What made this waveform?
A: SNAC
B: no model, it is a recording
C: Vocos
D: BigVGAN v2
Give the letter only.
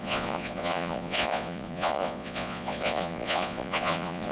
C